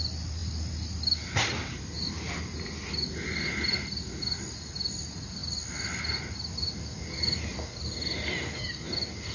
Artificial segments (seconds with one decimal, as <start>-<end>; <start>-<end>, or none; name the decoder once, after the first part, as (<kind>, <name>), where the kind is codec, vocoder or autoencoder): none